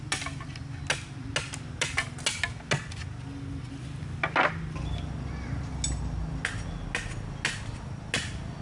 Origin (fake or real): real